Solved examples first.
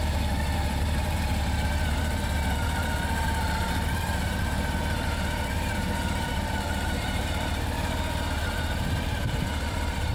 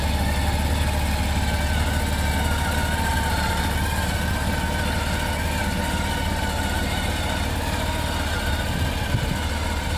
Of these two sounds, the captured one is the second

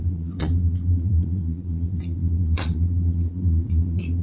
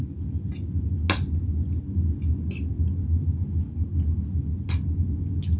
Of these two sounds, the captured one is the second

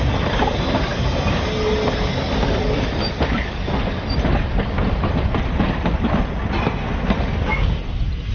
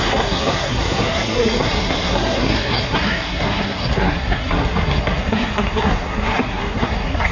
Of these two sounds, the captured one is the first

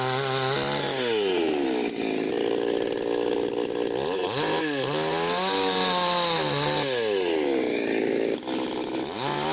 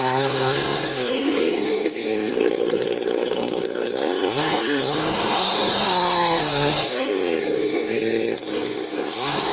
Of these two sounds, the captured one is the first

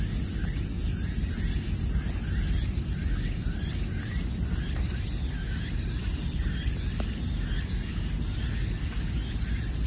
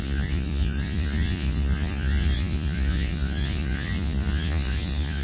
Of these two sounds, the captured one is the first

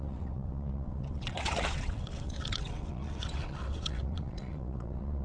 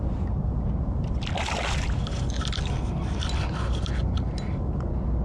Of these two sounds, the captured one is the second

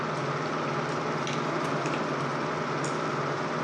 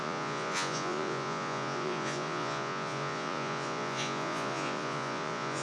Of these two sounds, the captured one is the first